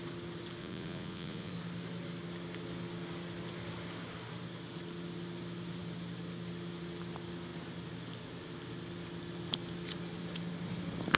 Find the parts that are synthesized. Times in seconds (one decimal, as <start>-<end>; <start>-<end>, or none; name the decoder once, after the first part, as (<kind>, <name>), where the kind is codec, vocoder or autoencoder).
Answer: 0.6-1.5 (vocoder, Vocos)